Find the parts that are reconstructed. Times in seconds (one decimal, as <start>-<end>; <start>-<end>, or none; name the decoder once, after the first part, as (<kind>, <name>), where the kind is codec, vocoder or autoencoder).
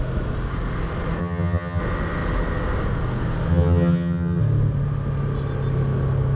1.2-1.8 (vocoder, HiFi-GAN); 3.5-4.4